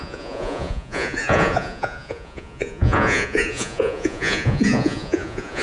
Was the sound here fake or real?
fake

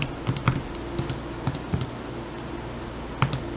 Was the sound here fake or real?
real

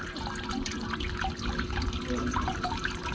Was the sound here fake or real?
real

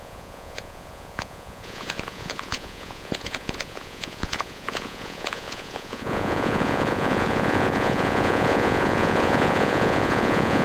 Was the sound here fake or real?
fake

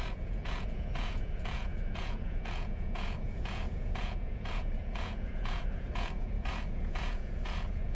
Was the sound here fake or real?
fake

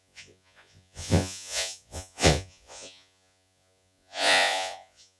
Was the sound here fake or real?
fake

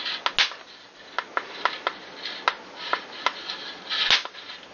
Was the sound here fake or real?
real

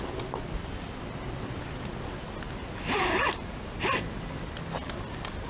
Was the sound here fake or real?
real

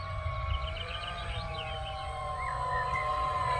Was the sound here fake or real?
fake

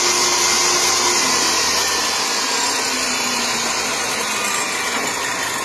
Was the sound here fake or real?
real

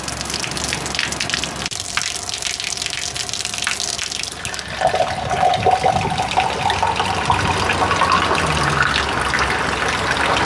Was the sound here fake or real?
real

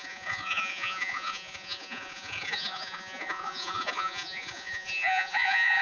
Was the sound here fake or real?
fake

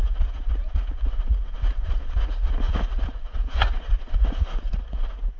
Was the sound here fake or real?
fake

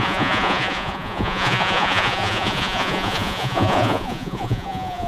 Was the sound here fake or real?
fake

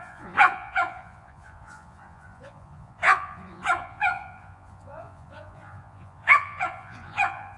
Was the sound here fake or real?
fake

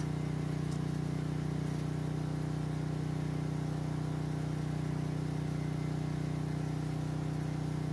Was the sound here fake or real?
real